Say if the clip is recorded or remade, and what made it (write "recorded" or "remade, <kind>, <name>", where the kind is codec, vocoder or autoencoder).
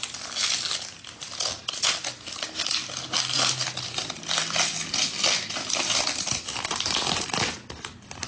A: recorded